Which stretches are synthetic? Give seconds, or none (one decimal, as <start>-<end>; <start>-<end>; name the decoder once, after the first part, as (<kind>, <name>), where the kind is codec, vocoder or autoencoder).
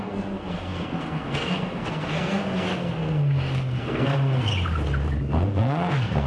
0.0-4.5 (codec, SNAC); 5.2-6.3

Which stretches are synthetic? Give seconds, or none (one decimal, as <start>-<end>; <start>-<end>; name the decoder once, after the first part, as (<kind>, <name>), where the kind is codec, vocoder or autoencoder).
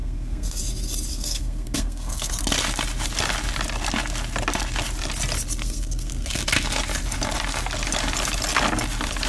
0.0-0.6 (codec, SNAC); 1.1-2.3; 5.6-6.4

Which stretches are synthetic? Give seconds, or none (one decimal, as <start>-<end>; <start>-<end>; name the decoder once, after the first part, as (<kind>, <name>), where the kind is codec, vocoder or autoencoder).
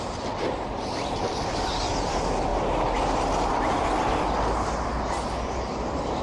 none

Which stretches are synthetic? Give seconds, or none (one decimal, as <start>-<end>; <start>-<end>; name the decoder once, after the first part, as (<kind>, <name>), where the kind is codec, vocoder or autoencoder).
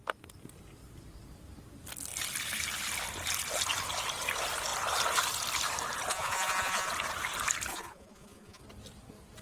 6.1-6.9 (vocoder, Vocos); 7.7-8.6